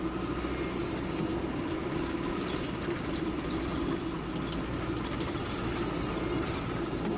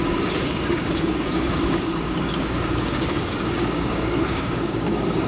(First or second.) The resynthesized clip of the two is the second